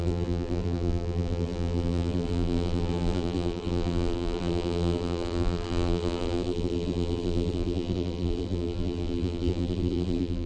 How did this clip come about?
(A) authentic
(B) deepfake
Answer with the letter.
B